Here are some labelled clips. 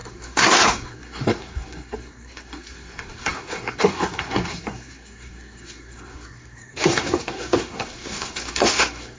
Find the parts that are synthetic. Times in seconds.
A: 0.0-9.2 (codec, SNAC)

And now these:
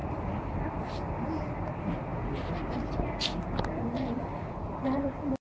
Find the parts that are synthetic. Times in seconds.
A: none

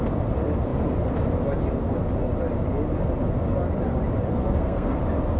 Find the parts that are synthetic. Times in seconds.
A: 4.3-5.0 (codec, SNAC)

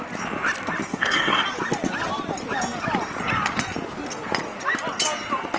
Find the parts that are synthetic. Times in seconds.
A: 0.9-1.4 (codec, SNAC)